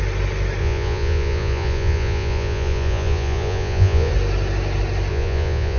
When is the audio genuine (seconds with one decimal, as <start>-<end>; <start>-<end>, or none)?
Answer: 0.0-0.6; 4.1-5.1